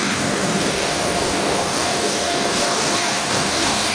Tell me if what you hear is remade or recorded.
remade